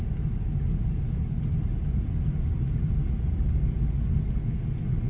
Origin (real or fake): real